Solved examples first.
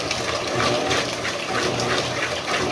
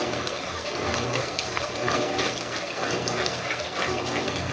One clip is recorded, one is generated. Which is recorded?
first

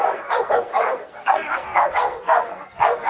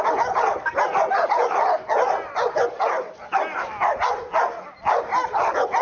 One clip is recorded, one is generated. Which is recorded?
second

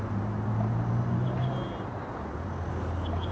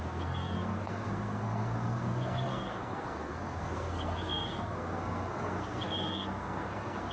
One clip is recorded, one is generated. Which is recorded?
first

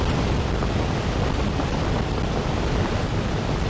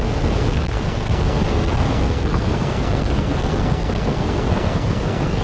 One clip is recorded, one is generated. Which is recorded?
first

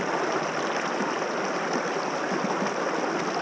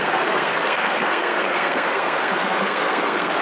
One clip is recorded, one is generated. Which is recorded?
first